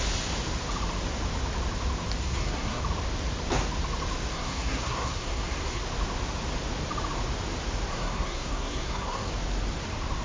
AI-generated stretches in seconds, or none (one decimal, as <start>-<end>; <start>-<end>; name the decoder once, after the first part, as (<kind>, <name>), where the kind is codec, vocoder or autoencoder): 2.2-2.8 (codec, SNAC); 4.3-5.8; 7.9-9.3